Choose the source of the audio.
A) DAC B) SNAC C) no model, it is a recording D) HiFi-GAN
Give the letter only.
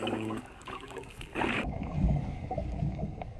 A